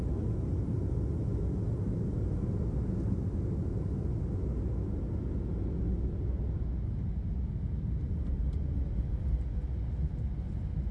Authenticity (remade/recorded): recorded